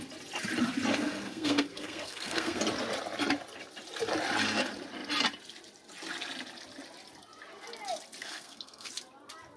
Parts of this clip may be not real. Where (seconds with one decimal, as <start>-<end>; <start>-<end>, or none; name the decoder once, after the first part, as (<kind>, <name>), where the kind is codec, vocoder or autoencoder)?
0.9-2.6 (codec, SNAC); 8.2-8.9